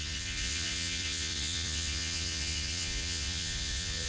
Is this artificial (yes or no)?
yes